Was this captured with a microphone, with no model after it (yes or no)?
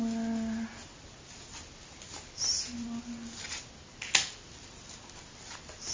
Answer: yes